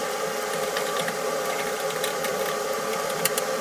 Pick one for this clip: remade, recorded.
remade